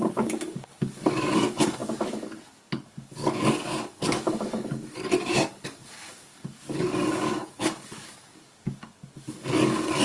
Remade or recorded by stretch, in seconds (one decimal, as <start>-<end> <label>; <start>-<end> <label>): 0.0-10.0 remade